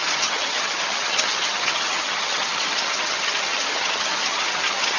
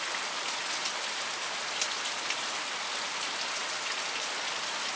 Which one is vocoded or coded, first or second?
first